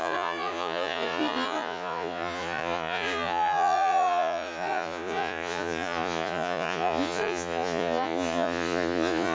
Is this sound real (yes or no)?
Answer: no